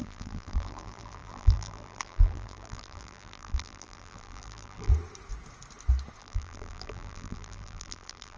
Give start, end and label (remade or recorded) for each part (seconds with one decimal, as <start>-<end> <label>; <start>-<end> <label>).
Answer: 0.0-4.9 remade; 4.9-6.2 recorded; 6.2-8.4 remade